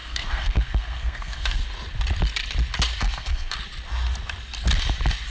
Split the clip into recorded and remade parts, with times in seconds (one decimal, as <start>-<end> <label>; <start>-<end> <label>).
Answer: 0.0-1.6 remade; 1.6-3.0 recorded; 3.0-3.6 remade; 3.6-5.3 recorded